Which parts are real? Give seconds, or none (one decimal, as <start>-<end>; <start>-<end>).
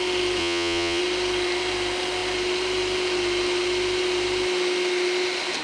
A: 0.0-0.4; 1.0-5.6